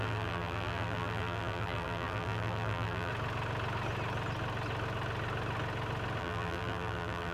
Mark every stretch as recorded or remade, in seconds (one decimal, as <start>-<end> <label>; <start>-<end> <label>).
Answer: 0.0-3.1 remade; 3.1-6.2 recorded; 6.2-7.3 remade